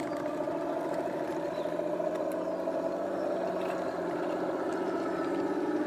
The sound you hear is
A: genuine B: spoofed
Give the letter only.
A